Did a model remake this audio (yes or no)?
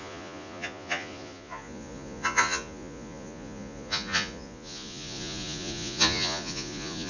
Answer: yes